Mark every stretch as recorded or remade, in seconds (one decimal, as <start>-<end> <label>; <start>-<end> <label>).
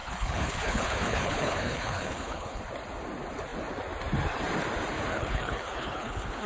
0.0-2.6 remade; 2.6-5.1 recorded; 5.1-6.5 remade